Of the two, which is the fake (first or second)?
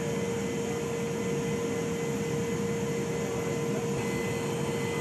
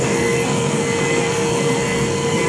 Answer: second